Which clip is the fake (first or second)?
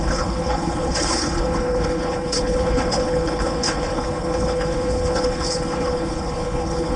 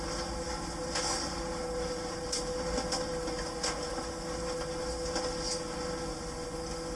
first